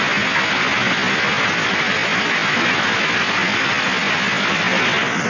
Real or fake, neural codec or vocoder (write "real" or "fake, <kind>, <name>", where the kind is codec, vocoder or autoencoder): real